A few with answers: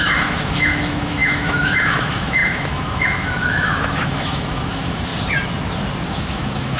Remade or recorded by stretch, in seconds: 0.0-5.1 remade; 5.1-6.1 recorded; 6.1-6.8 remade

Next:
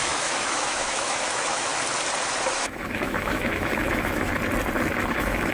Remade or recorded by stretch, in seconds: 0.0-1.7 remade; 1.7-2.5 recorded; 2.5-4.3 remade; 4.3-5.1 recorded; 5.1-5.5 remade